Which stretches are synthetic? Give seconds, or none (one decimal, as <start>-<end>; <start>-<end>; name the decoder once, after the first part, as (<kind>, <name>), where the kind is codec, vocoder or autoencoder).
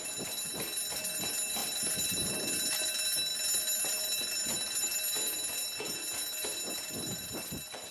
none